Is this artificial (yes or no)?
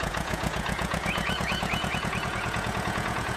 yes